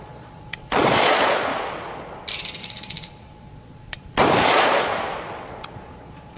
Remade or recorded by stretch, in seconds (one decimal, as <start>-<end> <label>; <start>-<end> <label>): 0.0-1.5 remade; 1.5-2.6 recorded; 2.6-4.0 remade; 4.0-4.5 recorded; 4.5-4.9 remade; 4.9-5.5 recorded; 5.5-6.4 remade